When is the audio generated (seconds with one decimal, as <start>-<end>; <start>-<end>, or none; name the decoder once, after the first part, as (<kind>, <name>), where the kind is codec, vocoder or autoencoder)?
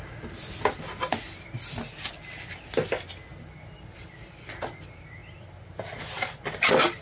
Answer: none